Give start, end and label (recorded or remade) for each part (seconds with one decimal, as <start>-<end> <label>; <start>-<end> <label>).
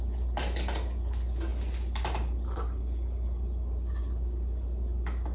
0.0-5.3 recorded